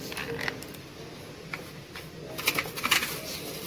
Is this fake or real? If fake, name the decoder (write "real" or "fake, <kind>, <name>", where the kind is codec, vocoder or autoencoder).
real